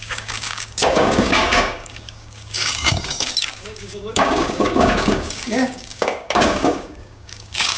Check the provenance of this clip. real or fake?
fake